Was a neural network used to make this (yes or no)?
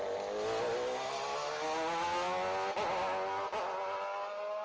no